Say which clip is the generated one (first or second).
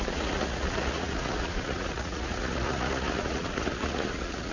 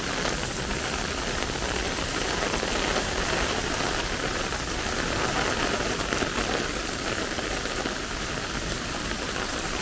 first